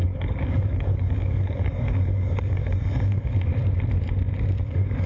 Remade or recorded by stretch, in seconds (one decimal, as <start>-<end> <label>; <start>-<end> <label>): 0.0-3.5 remade; 3.5-4.6 recorded; 4.6-5.1 remade